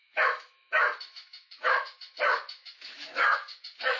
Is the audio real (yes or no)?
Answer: no